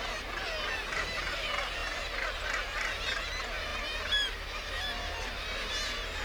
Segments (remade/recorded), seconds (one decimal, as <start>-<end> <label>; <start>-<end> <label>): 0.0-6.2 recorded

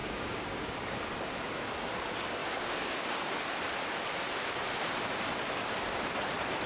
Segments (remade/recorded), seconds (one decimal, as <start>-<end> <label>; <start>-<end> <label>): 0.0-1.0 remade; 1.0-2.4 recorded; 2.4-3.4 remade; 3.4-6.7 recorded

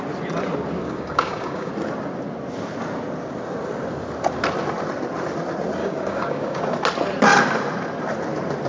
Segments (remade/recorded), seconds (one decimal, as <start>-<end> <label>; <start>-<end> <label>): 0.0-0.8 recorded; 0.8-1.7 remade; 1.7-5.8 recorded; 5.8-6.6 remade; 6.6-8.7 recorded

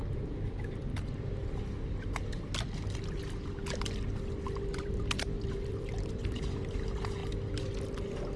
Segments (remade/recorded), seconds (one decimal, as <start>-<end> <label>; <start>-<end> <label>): 0.0-0.8 remade; 0.8-4.8 recorded; 4.8-7.2 remade; 7.2-8.4 recorded

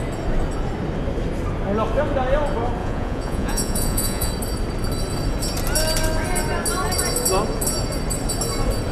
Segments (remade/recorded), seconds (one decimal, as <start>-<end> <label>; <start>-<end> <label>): 0.0-2.8 recorded; 2.8-4.3 remade; 4.3-8.9 recorded

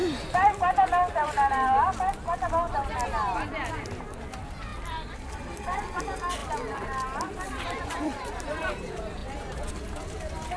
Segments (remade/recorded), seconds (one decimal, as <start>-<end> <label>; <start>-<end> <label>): 0.0-4.7 recorded; 4.7-6.0 remade; 6.0-6.4 recorded; 6.4-8.4 remade; 8.4-10.6 recorded